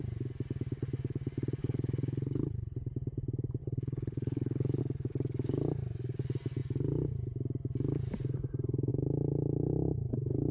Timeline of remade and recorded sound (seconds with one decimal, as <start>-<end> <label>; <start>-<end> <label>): 0.0-1.6 recorded; 1.6-2.9 remade; 2.9-3.6 recorded; 3.6-4.8 remade; 4.8-10.5 recorded